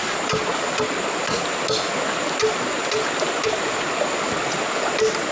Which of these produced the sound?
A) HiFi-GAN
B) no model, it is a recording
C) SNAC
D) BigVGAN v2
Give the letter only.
B